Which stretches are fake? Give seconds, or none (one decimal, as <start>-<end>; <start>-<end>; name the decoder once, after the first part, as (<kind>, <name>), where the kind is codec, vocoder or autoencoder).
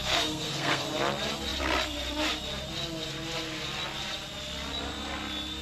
0.0-0.8 (codec, SNAC)